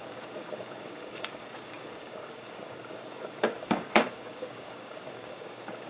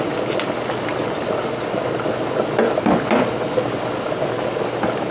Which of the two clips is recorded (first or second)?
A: second